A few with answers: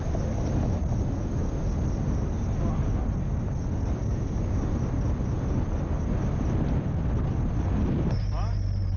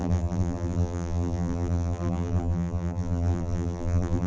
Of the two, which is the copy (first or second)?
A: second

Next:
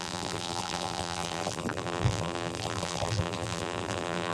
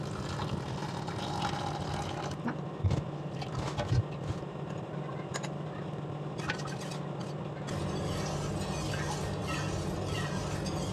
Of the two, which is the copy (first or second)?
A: first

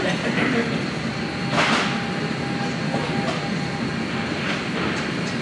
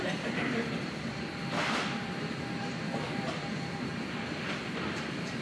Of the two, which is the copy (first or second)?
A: second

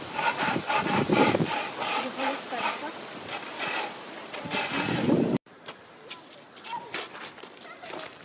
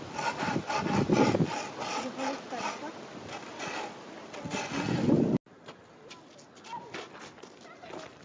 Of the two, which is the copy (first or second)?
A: first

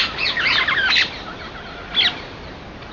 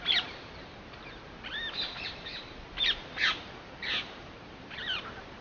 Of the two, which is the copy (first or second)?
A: second